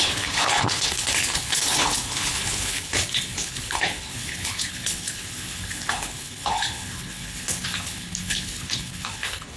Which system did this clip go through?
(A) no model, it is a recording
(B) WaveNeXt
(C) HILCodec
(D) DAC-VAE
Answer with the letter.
C